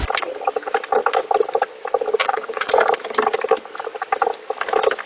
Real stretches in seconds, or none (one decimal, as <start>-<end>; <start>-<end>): 0.0-2.2; 2.7-5.1